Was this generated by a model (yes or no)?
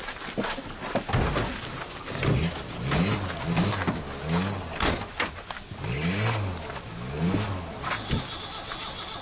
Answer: no